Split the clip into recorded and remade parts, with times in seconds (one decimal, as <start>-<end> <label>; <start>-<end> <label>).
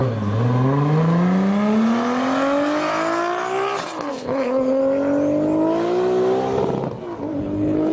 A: 0.0-4.1 recorded; 4.1-4.8 remade; 4.8-7.4 recorded; 7.4-7.9 remade